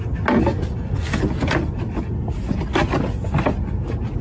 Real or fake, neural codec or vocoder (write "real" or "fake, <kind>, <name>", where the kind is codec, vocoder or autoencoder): real